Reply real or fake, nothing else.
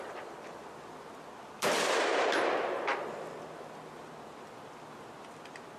real